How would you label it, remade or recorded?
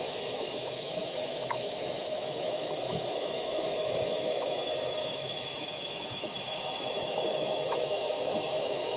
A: remade